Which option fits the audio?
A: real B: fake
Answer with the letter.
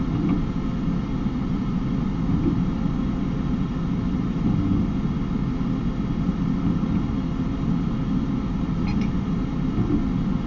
A